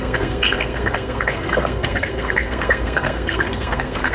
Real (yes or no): no